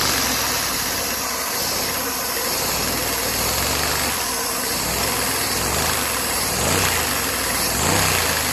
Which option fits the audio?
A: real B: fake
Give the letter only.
A